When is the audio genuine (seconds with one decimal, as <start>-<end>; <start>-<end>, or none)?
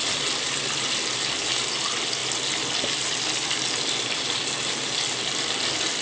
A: 0.0-6.0